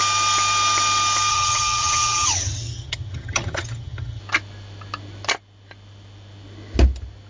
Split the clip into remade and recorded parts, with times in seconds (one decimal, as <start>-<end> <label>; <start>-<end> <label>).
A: 0.0-1.3 recorded; 1.3-4.2 remade; 4.2-7.3 recorded